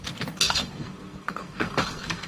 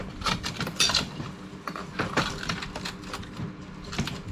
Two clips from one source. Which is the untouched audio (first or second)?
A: second